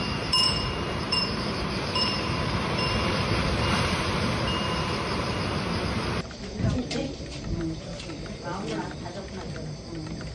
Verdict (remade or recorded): remade